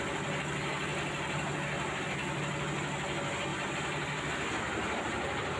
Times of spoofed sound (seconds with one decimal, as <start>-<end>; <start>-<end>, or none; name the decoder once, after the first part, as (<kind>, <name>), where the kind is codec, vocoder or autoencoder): none